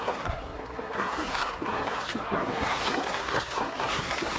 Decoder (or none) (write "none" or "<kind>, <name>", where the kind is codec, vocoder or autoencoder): codec, SNAC